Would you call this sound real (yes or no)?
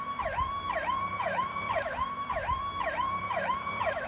no